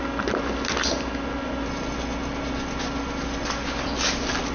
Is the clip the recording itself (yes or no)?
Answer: yes